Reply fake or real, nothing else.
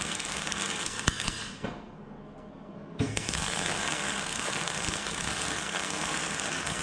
fake